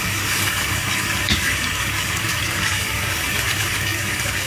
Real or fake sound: fake